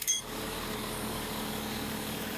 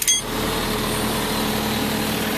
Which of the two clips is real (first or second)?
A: second